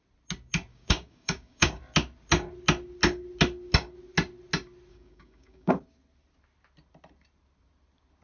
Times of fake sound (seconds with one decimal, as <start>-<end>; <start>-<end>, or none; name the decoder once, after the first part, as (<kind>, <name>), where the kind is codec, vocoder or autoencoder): 0.7-1.8 (codec, DAC); 4.9-5.7